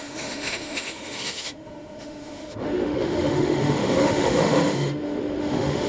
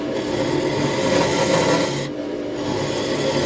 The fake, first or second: first